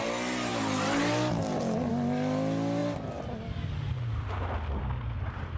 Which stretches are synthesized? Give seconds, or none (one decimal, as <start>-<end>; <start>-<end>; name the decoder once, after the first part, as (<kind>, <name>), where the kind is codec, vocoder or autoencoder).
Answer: none